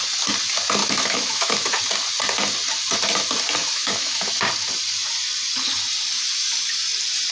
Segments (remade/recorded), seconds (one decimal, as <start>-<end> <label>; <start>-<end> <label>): 0.0-0.8 recorded; 0.8-1.8 remade; 1.8-3.6 recorded; 3.6-4.3 remade; 4.3-7.3 recorded